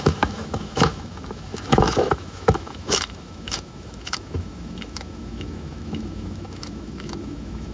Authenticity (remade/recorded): remade